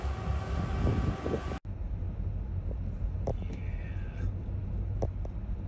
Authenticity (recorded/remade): recorded